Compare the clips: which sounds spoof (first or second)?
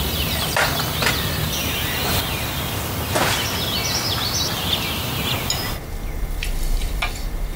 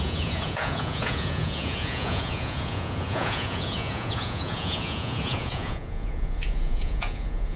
second